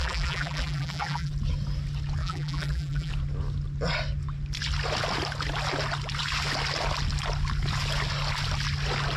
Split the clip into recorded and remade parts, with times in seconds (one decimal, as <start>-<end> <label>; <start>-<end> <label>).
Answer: 0.0-1.3 remade; 1.3-2.2 recorded; 2.2-3.1 remade; 3.1-9.2 recorded